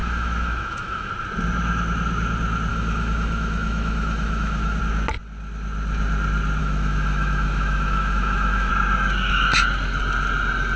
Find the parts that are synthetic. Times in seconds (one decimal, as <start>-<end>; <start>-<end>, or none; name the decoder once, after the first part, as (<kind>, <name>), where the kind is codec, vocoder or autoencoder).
0.0-1.1 (autoencoder, DAC-VAE); 2.7-4.8; 6.6-8.7